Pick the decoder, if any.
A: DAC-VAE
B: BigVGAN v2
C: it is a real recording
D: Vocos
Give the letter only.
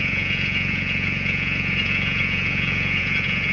D